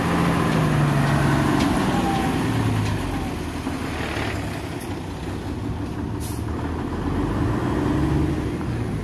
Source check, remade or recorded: recorded